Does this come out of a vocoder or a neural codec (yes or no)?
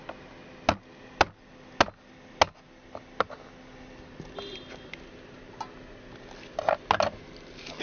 no